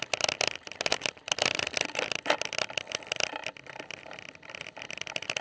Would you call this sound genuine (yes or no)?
no